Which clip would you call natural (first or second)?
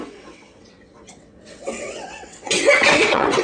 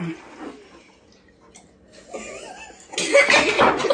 second